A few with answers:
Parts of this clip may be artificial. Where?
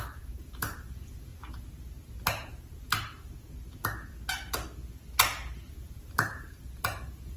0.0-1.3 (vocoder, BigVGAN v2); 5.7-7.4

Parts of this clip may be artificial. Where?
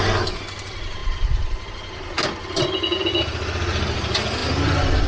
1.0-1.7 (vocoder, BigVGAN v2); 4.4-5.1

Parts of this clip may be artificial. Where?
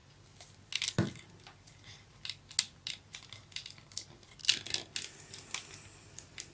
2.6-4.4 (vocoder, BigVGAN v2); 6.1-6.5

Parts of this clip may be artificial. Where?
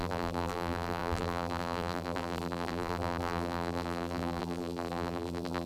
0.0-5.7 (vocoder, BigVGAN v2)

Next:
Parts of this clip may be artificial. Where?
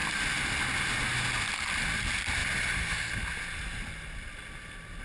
none